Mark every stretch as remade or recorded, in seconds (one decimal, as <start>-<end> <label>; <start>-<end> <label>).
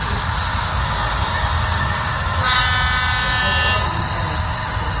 0.0-0.7 recorded; 0.7-2.6 remade; 2.6-5.0 recorded